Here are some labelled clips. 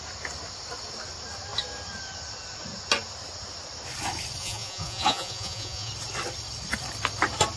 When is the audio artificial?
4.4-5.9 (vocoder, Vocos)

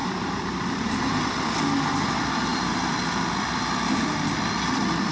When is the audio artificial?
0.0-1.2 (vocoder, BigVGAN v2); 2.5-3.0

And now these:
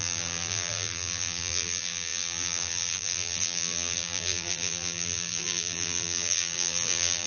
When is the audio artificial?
0.0-7.3 (vocoder, BigVGAN v2)

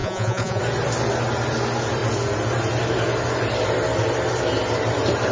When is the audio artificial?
0.0-0.6 (vocoder, Vocos)

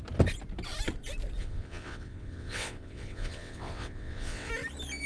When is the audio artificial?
1.4-4.5 (vocoder, WaveNeXt)

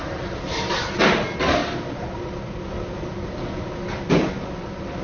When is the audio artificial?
none

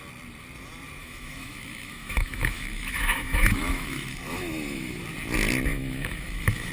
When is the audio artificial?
1.0-5.0 (autoencoder, DAC-VAE); 5.7-6.7

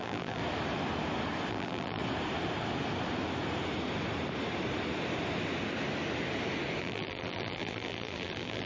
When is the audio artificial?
0.0-0.4 (vocoder, BigVGAN v2); 1.5-2.0; 6.8-8.7